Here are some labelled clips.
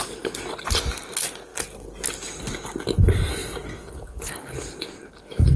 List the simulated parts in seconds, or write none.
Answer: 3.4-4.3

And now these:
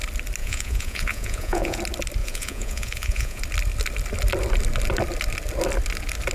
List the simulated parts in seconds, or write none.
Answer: 0.4-1.8; 2.2-3.4

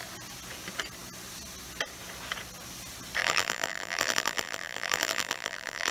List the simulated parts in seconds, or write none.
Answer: 3.2-5.9